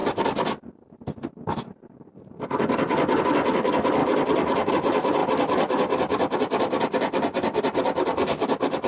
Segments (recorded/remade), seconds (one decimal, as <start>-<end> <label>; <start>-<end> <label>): 0.0-3.2 recorded; 3.2-4.0 remade; 4.0-4.7 recorded; 4.7-5.2 remade; 5.2-8.9 recorded